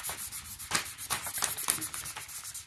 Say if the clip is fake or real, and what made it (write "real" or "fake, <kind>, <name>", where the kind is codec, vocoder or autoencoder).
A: real